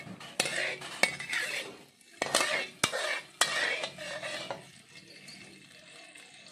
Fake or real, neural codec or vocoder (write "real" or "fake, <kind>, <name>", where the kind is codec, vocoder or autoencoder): real